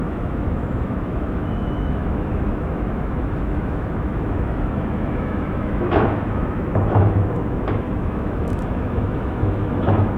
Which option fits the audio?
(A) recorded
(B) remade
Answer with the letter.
B